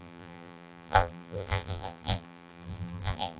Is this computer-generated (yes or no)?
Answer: yes